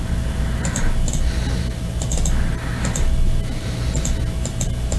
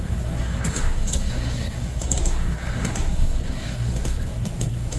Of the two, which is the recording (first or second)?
first